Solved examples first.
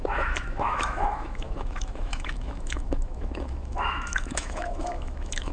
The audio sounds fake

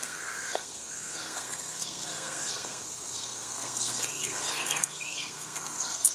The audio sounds fake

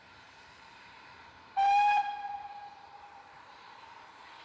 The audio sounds fake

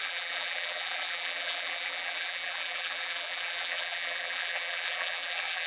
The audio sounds fake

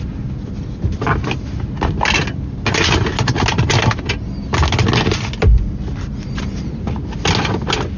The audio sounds real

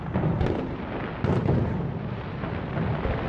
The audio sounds real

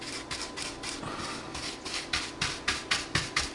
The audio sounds fake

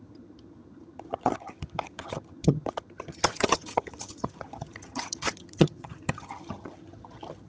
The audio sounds fake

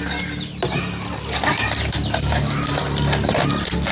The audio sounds real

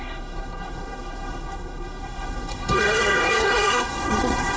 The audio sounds fake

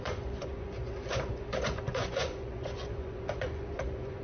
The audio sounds fake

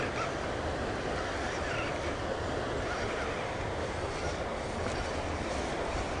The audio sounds real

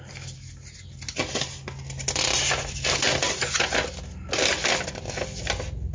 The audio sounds real